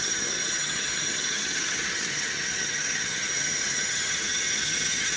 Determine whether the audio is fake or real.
fake